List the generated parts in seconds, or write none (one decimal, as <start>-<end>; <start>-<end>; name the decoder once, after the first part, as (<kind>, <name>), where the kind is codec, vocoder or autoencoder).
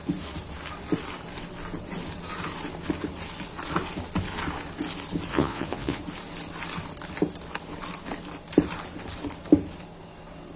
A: 5.3-6.0 (vocoder, Vocos)